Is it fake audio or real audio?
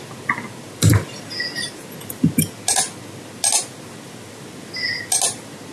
real